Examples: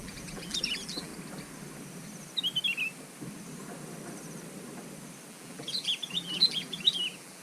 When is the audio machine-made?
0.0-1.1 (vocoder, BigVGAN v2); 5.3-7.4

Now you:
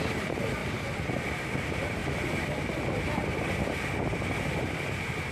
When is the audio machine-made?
0.0-0.6 (vocoder, BigVGAN v2); 1.6-2.0

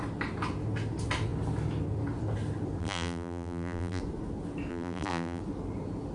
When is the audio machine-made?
2.8-4.0 (vocoder, BigVGAN v2); 4.7-5.4

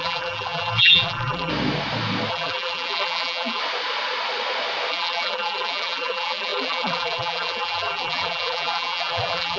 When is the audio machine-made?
0.0-1.5 (vocoder, BigVGAN v2); 2.3-3.6; 4.9-9.6

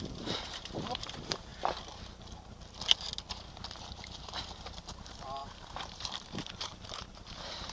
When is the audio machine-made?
0.0-1.5 (vocoder, BigVGAN v2); 3.3-7.7

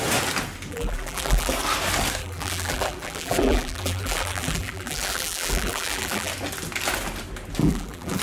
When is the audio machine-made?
0.7-1.5 (vocoder, BigVGAN v2); 2.2-6.3; 7.6-8.2

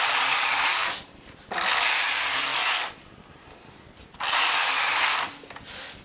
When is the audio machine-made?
none